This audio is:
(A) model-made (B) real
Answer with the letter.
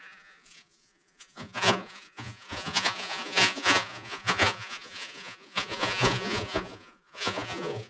A